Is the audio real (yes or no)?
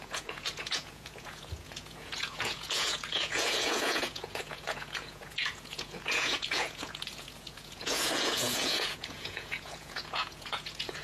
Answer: no